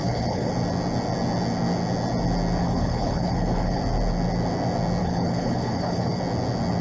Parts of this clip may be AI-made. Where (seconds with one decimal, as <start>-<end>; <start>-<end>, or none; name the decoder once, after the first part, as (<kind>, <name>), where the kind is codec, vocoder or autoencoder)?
0.0-0.5 (codec, HILCodec); 2.6-3.8; 5.0-6.2